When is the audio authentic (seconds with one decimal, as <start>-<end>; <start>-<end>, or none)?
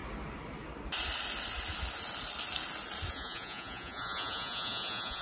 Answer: 0.0-3.1